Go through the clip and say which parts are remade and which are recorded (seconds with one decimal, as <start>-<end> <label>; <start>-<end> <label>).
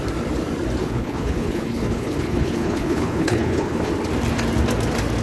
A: 0.0-0.8 recorded; 0.8-3.9 remade; 3.9-5.2 recorded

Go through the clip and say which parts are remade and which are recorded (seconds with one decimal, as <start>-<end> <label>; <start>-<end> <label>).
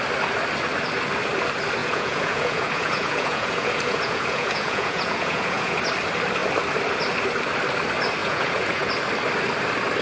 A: 0.0-1.8 recorded; 1.8-5.9 remade; 5.9-8.2 recorded; 8.2-8.9 remade; 8.9-10.0 recorded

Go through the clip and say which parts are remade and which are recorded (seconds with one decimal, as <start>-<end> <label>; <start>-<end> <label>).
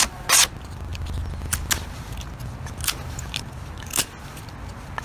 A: 0.0-5.0 recorded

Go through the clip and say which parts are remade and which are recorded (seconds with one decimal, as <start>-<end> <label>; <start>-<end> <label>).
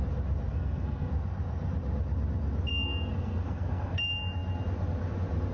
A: 0.0-0.5 recorded; 0.5-1.1 remade; 1.1-2.7 recorded; 2.7-4.0 remade; 4.0-5.5 recorded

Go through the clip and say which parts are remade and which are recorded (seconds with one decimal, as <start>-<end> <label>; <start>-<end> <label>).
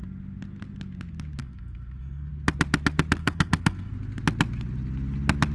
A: 0.0-1.4 recorded; 1.4-2.3 remade; 2.3-3.2 recorded; 3.2-3.9 remade; 3.9-5.5 recorded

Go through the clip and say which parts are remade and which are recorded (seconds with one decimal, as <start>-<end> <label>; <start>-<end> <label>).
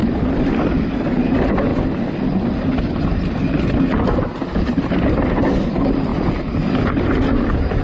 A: 0.0-7.8 recorded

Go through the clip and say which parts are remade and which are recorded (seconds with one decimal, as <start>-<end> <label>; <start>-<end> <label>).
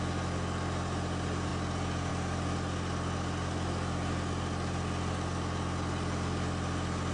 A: 0.0-7.1 recorded